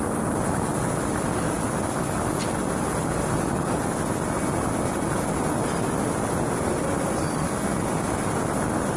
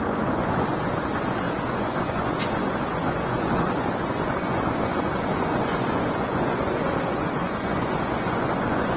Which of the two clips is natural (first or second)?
first